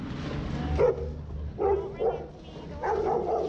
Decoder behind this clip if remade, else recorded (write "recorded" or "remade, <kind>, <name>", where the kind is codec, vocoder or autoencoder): recorded